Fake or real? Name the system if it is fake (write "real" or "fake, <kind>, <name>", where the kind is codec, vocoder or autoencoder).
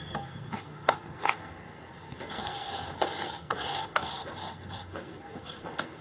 fake, codec, SNAC